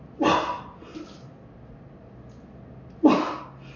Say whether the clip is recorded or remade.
recorded